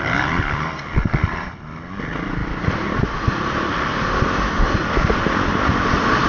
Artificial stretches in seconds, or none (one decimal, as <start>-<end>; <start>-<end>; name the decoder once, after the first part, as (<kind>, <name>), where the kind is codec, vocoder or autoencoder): none